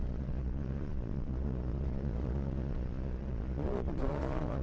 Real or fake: fake